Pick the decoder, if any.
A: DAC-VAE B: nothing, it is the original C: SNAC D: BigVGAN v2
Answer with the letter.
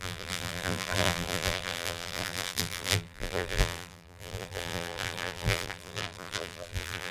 D